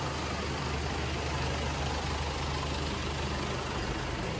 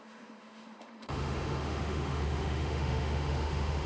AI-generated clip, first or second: second